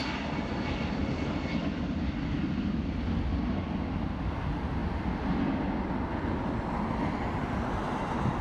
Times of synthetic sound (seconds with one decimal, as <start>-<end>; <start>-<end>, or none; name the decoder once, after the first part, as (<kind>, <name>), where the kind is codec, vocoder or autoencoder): none